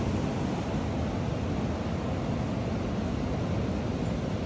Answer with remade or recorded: recorded